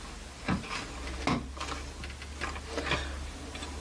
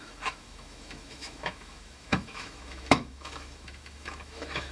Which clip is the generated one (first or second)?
second